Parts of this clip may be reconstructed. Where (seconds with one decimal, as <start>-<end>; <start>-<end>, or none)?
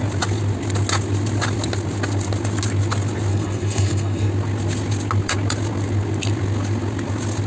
3.3-4.3